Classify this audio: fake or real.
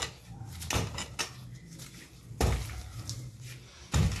real